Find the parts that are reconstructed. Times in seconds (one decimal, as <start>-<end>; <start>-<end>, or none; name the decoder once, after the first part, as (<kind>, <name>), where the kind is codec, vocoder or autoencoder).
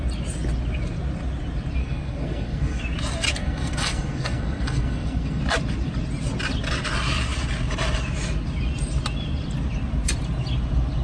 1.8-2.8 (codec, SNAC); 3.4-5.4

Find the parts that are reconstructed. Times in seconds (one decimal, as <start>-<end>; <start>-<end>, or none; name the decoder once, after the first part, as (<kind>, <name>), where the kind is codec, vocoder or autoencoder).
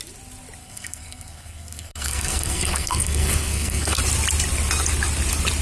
0.6-4.0 (codec, SNAC)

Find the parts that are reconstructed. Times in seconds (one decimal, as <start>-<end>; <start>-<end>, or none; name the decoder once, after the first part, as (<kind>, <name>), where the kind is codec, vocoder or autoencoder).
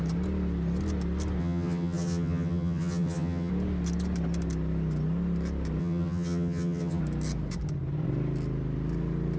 1.4-3.5 (vocoder, HiFi-GAN); 5.8-7.0